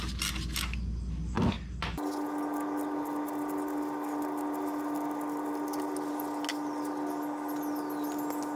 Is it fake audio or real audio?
real